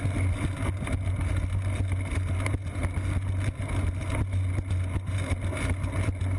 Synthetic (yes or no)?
no